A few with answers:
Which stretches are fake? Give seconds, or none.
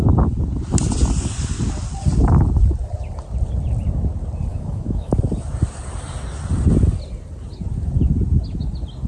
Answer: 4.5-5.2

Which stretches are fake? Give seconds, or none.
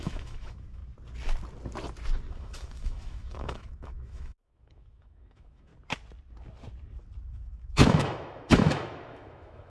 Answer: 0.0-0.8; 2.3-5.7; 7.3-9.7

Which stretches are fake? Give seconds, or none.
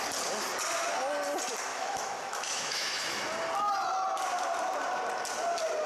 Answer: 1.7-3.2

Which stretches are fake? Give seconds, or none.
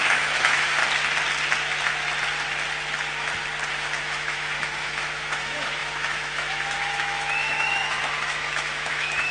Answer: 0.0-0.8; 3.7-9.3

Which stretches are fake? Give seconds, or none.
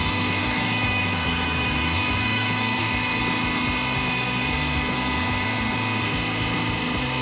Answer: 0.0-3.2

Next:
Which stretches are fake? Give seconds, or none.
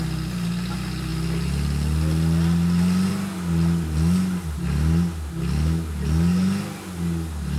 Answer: none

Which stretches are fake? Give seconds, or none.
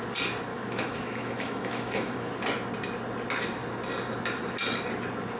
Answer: 0.5-2.3